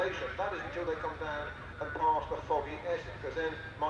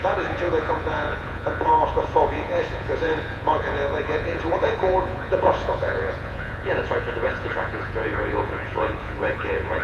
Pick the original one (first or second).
first